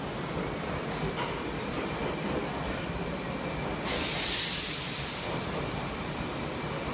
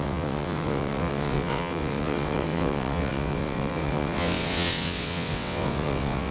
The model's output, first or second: second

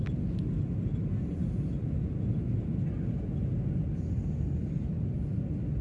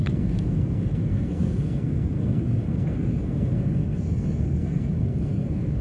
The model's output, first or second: second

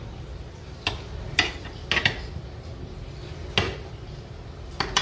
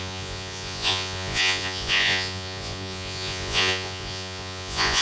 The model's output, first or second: second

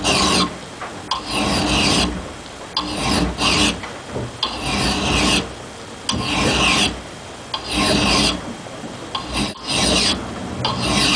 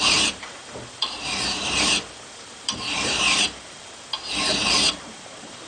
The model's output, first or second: second